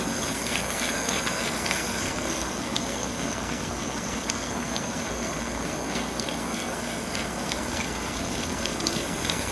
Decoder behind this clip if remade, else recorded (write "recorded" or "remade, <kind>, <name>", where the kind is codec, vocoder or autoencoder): remade, codec, SNAC